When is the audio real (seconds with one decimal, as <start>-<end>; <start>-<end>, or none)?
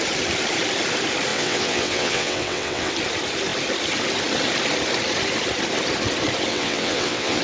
0.0-1.3; 2.9-6.5